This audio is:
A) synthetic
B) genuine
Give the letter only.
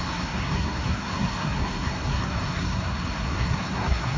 A